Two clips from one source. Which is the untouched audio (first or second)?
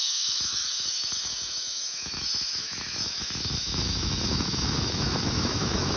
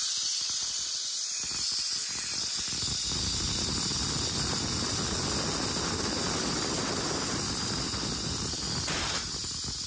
second